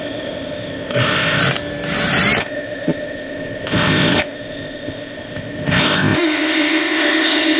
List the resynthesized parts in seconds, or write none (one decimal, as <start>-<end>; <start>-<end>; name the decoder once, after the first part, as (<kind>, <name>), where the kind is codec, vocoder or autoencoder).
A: 0.0-1.4 (codec, ZipCodec); 2.4-7.6